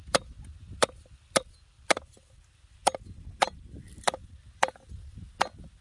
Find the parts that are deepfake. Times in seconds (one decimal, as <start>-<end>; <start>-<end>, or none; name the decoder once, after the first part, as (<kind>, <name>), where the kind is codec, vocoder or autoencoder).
none